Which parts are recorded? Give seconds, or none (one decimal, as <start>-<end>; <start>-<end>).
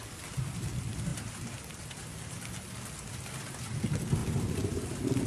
0.0-1.1; 1.8-4.2